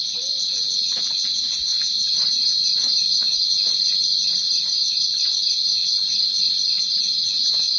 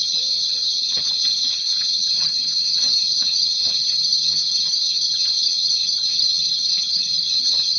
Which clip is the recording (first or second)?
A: first